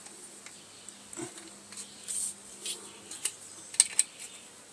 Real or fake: real